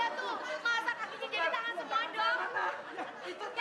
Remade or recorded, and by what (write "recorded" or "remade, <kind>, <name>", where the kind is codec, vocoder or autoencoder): recorded